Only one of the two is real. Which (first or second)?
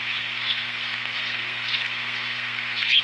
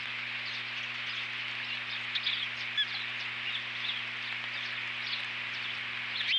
second